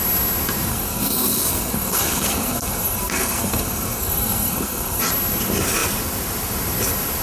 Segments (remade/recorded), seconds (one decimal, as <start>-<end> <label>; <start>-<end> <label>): 0.0-0.7 recorded; 0.7-5.0 remade; 5.0-7.2 recorded